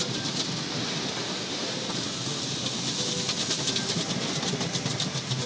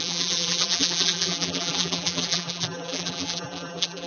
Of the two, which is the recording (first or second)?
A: first